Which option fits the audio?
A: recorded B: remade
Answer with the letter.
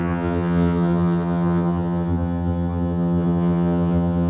B